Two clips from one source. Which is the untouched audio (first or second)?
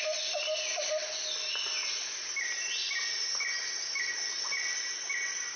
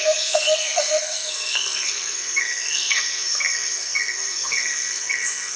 first